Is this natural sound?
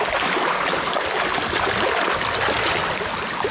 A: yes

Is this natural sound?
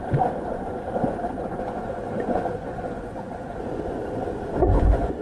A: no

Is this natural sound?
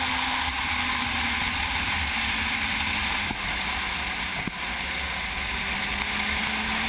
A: yes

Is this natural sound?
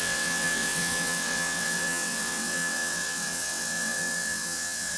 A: no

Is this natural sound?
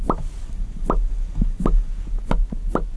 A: yes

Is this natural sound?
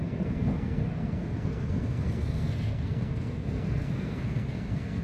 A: no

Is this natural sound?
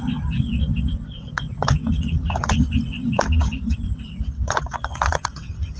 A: no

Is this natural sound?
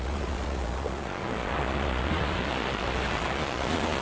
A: no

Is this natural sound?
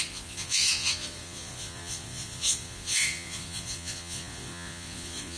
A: no